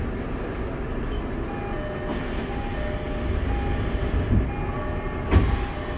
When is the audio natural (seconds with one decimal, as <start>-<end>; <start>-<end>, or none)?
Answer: 0.0-6.0